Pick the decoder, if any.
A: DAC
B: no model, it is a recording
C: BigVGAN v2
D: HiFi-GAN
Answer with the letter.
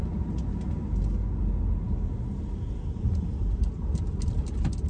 B